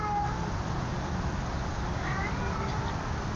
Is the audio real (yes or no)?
yes